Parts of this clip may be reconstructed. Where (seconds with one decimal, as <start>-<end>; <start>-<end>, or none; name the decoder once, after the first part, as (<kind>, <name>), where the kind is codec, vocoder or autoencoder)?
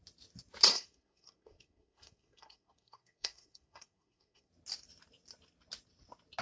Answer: 0.7-4.5 (codec, SNAC)